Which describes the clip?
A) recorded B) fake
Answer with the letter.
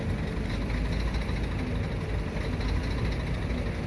A